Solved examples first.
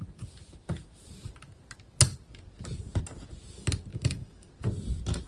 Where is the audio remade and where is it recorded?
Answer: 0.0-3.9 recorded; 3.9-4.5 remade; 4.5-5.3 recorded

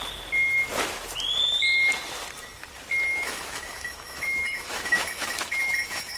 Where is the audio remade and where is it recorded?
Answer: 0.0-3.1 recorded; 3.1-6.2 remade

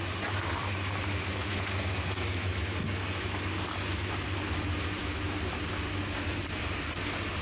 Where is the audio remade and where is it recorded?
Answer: 0.0-1.4 recorded; 1.4-2.4 remade; 2.4-5.0 recorded; 5.0-5.6 remade; 5.6-7.4 recorded

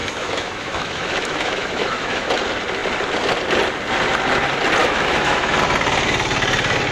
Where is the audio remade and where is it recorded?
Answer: 0.0-2.3 remade; 2.3-4.8 recorded; 4.8-5.5 remade; 5.5-6.9 recorded